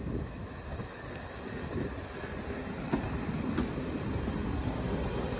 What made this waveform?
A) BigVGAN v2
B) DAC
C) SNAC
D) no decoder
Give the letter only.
D